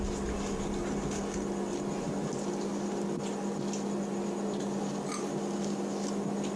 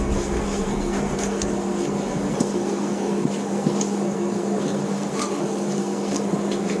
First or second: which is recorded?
first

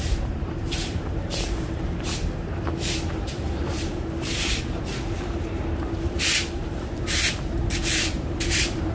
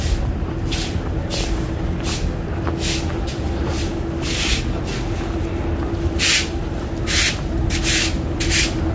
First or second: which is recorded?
second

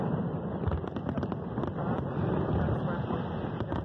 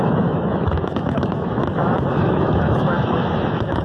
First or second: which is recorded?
first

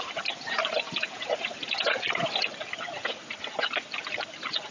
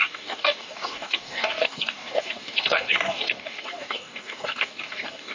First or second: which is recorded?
first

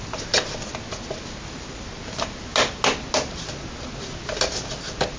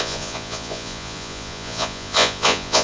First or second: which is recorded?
first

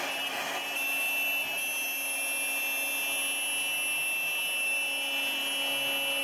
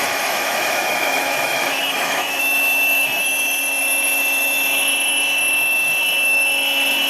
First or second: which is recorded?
first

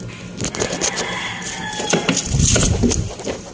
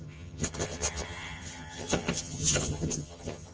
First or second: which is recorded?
first